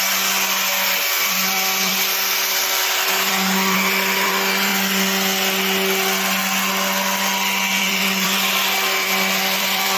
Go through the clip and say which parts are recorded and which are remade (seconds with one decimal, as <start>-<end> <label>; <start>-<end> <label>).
0.0-4.7 remade; 4.7-7.8 recorded; 7.8-10.0 remade